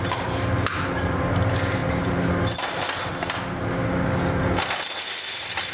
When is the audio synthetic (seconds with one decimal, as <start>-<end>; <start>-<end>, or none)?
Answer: none